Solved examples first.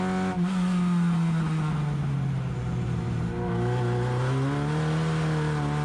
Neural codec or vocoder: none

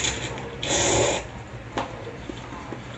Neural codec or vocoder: none